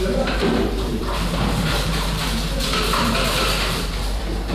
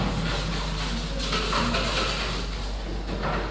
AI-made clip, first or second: first